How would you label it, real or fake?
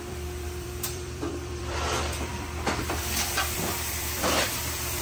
fake